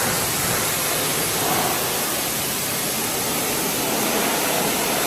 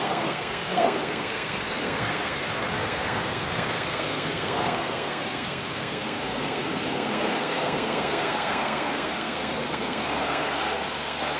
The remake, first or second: second